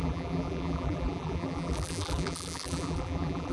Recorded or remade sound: remade